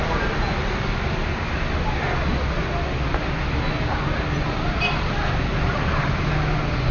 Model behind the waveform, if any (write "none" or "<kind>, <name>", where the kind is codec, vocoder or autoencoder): none